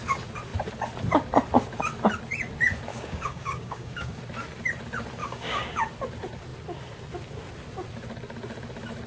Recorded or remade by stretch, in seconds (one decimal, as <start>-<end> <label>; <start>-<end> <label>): 0.0-2.9 recorded; 2.9-4.2 remade; 4.2-5.2 recorded; 5.2-5.8 remade; 5.8-9.1 recorded